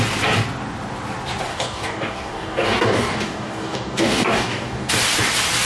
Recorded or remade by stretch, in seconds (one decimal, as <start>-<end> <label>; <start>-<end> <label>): 0.0-1.5 recorded; 1.5-4.9 remade; 4.9-5.7 recorded